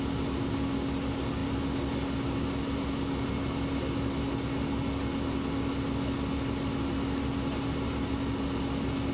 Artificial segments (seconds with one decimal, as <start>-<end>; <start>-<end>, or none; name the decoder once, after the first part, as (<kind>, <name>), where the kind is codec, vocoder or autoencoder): none